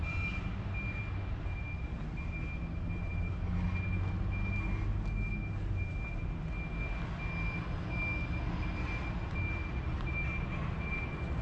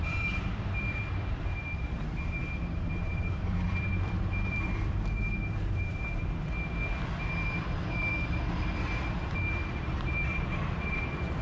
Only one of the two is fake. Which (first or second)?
second